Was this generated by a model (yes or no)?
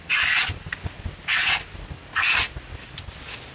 no